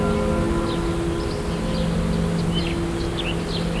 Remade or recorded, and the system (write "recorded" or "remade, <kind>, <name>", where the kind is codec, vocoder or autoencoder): recorded